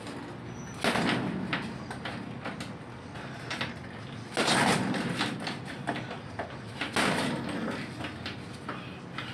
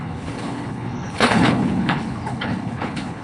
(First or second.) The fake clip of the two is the second